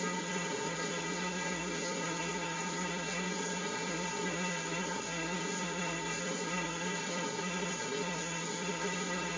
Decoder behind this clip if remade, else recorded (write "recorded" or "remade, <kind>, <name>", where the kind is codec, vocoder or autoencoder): remade, codec, SNAC